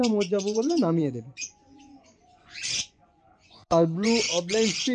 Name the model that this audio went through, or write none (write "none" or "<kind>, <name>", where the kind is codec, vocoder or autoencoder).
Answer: vocoder, Vocos